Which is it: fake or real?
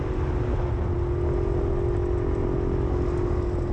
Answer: real